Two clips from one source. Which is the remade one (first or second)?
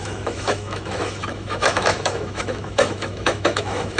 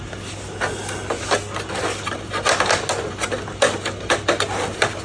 first